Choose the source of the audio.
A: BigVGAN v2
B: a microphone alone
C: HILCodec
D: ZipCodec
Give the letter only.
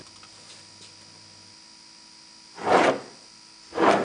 B